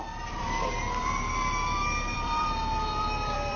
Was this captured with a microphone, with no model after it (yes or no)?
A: no